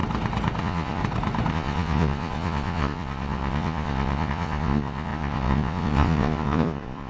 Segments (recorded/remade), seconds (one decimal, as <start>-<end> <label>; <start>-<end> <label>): 0.0-0.6 recorded; 0.6-1.0 remade; 1.0-1.5 recorded; 1.5-7.1 remade